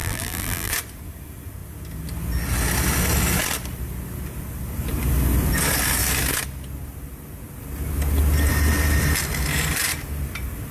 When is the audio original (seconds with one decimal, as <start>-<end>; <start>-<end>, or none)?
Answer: 0.7-10.7

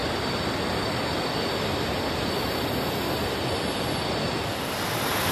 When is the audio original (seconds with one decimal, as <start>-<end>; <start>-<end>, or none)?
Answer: 0.0-5.3